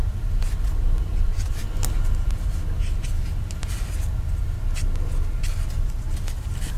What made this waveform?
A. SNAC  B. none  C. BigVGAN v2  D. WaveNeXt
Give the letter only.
B